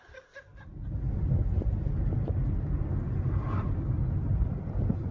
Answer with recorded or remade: recorded